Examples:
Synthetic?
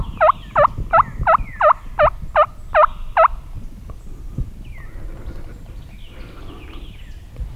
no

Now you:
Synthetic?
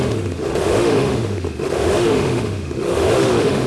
yes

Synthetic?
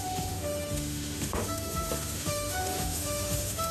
yes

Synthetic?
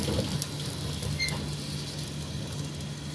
no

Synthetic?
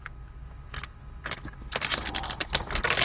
no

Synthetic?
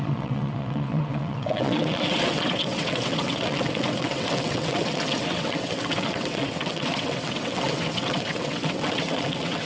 yes